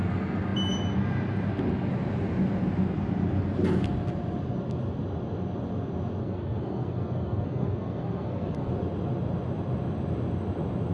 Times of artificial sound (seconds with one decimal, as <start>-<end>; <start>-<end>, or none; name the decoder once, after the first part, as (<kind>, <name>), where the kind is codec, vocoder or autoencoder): 6.2-8.7 (codec, SNAC)